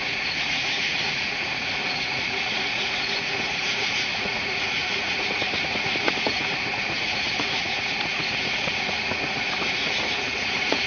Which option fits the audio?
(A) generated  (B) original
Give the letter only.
A